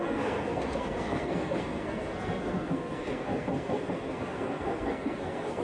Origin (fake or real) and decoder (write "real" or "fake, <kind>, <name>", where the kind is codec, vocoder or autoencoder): fake, codec, SNAC